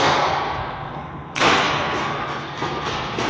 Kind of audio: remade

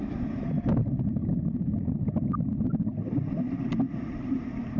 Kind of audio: recorded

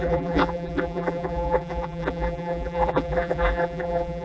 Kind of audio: remade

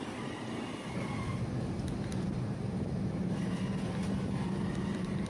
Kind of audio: recorded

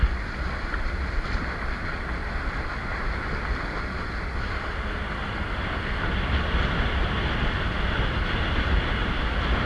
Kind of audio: recorded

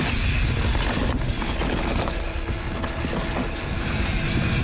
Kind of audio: recorded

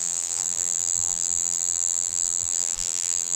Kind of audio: remade